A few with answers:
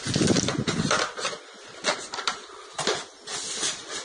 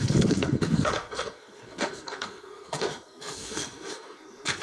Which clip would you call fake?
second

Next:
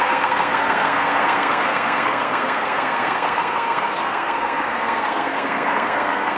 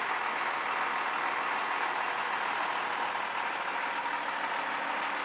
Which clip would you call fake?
first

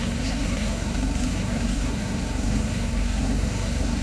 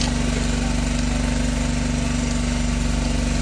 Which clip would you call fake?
first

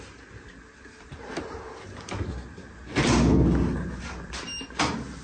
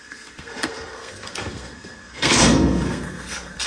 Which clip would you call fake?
second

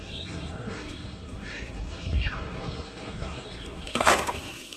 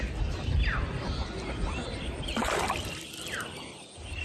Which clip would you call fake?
first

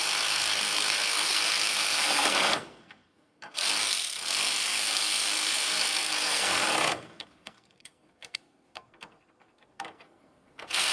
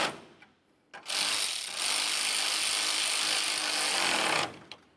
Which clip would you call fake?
first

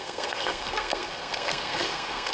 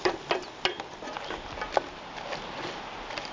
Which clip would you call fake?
first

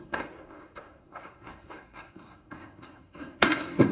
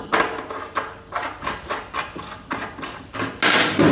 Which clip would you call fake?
first